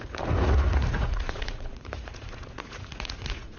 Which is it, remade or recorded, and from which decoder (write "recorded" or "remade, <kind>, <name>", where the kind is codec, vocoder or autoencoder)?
remade, vocoder, Vocos